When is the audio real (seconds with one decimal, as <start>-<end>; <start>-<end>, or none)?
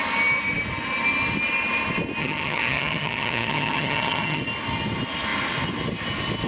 0.0-2.2; 4.4-6.5